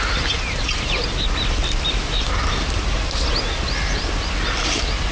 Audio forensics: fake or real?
real